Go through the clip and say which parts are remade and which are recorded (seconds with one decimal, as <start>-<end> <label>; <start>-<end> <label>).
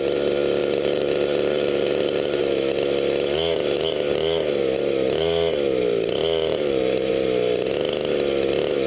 0.0-0.6 recorded; 0.6-2.4 remade; 2.4-6.5 recorded; 6.5-7.1 remade; 7.1-8.9 recorded